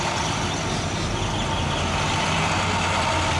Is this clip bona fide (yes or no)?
yes